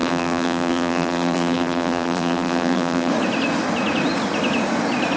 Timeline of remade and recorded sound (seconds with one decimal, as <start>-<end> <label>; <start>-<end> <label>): 0.0-3.1 remade; 3.1-5.2 recorded